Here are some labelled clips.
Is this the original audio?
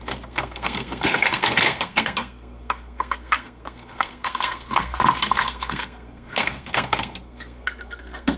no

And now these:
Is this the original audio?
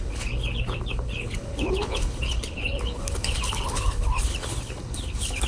no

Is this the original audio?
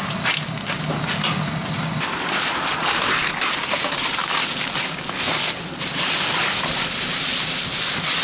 yes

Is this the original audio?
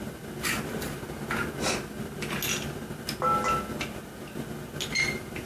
yes